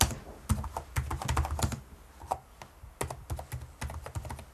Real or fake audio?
real